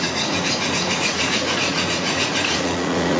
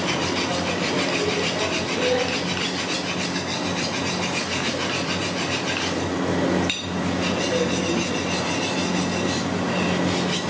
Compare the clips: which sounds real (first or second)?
second